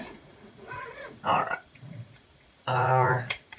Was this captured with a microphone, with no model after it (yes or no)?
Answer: no